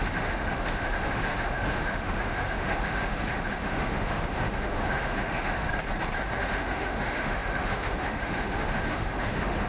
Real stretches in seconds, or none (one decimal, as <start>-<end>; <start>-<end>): 5.7-6.4